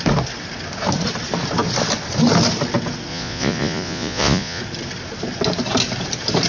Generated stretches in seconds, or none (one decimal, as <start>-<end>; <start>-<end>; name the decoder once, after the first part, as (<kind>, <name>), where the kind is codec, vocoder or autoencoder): 3.1-4.6 (vocoder, Vocos)